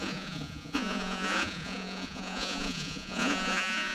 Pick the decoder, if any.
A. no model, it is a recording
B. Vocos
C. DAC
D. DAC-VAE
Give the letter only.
B